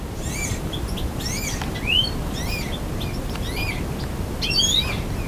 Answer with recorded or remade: recorded